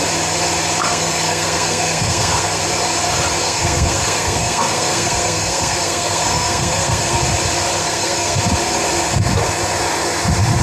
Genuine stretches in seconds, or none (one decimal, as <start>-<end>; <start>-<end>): 0.0-0.8; 2.6-3.4; 7.2-7.8; 8.4-10.6

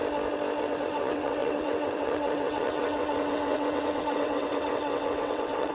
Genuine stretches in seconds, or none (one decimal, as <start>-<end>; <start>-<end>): 0.0-0.6

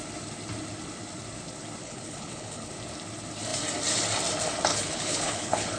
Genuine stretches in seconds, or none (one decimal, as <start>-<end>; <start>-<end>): 0.0-1.8; 2.7-4.7

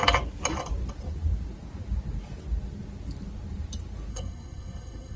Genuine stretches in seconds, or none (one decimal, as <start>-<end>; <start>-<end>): 0.0-4.1

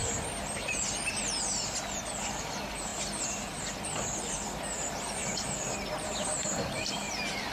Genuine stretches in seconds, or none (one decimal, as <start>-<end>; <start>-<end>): 2.9-3.6; 5.2-5.9

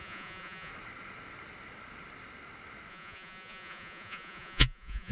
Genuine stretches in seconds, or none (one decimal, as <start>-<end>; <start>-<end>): 0.7-2.9